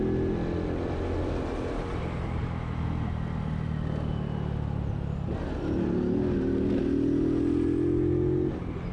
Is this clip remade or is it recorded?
recorded